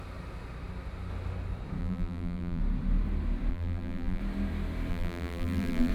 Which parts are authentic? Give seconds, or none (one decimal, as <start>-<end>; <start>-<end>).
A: 0.0-1.8; 2.6-3.5; 4.2-4.9